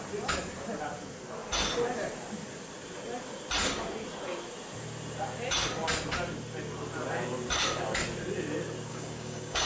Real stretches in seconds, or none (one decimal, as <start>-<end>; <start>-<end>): 0.0-8.9